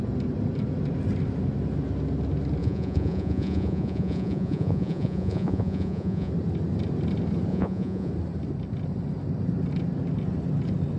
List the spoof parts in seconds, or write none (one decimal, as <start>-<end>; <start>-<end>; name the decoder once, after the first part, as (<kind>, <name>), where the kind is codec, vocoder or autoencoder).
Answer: 2.6-6.3 (vocoder, Vocos); 7.5-8.1